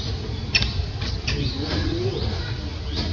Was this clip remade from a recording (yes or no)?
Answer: no